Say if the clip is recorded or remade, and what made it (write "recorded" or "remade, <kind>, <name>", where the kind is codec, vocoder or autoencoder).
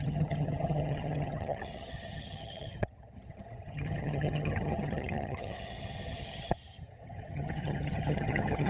remade, vocoder, HiFi-GAN